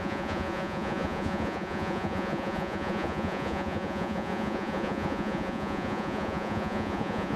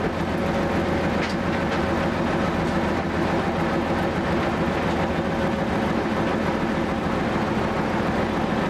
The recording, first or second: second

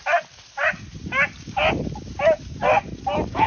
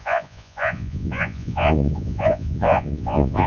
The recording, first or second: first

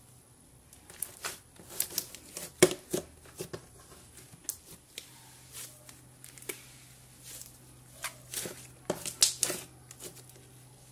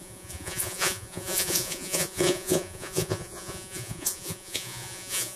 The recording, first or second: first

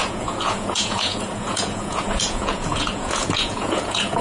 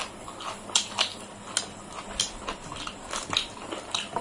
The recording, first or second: second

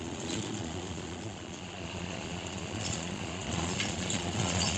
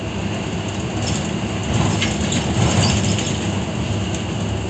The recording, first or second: second